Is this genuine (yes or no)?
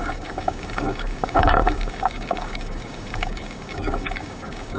no